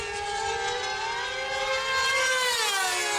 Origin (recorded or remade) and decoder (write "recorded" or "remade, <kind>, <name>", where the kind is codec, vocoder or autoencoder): recorded